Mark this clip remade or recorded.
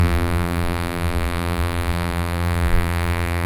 remade